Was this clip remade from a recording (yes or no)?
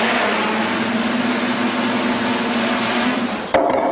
no